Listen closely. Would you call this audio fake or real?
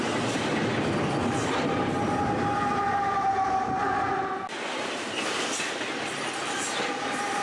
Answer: real